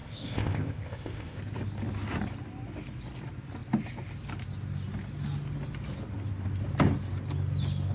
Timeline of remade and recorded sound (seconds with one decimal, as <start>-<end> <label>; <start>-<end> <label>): 0.0-1.4 remade; 1.4-7.9 recorded